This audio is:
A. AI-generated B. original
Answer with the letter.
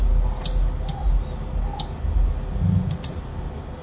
B